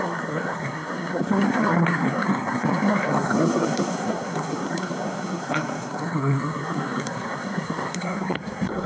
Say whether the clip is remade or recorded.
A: remade